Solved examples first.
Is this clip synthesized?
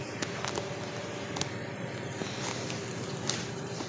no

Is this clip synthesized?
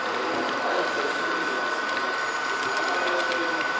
no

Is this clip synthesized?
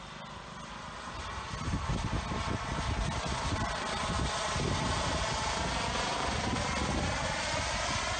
no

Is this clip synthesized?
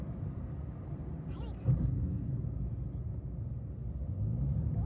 no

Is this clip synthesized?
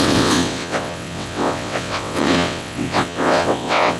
yes